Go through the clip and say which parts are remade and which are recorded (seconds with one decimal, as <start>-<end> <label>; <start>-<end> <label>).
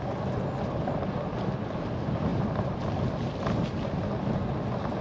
0.0-5.0 recorded